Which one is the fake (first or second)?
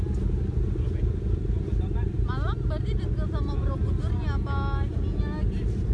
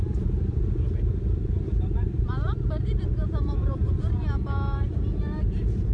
second